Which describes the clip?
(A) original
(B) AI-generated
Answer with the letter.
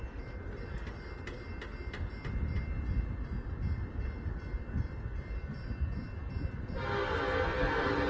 A